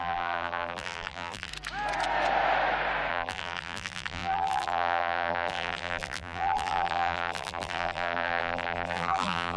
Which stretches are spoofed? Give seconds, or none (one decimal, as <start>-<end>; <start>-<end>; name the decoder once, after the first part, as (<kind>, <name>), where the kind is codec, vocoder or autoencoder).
0.0-1.5 (vocoder, BigVGAN v2); 3.1-9.6